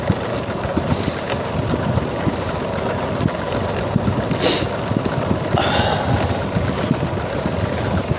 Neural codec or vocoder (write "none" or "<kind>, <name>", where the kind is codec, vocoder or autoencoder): none